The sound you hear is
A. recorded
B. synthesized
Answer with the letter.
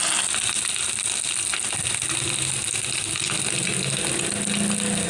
A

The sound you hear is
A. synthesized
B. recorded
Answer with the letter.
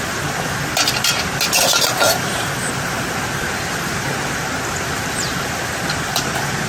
B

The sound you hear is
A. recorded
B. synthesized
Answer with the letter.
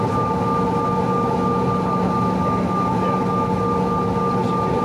A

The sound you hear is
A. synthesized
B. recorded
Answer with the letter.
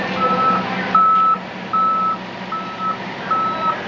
B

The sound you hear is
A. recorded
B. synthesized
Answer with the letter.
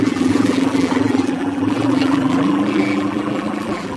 B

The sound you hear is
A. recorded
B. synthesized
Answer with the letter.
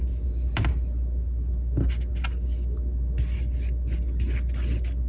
A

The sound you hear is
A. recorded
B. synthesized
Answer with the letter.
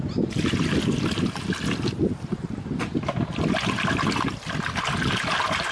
A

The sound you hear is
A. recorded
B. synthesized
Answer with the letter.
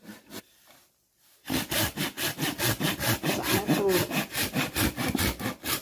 B